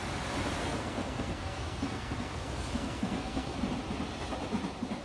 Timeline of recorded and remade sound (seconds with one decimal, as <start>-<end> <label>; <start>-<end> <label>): 0.0-0.6 recorded; 0.6-3.6 remade; 3.6-5.0 recorded